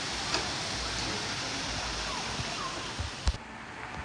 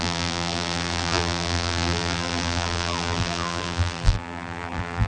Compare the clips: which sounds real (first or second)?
first